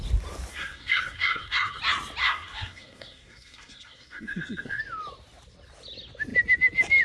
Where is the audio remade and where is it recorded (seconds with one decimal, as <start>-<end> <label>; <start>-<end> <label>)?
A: 0.0-0.5 recorded; 0.5-1.8 remade; 1.8-2.2 recorded; 2.2-4.8 remade; 4.8-7.0 recorded